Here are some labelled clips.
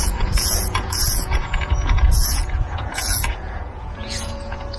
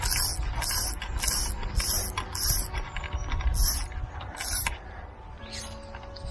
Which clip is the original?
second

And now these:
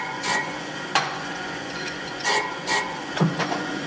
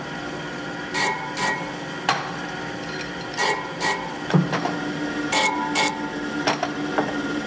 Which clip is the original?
second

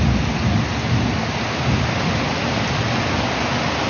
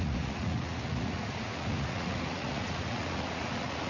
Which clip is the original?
first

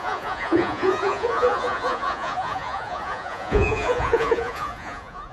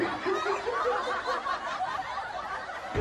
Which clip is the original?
second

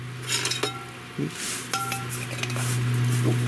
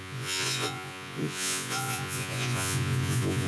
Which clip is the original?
first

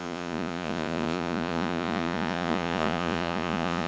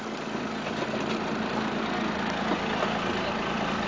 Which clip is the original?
second